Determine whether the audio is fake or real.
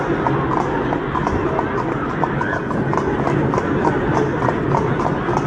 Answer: real